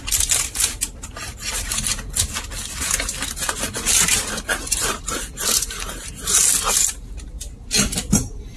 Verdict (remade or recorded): recorded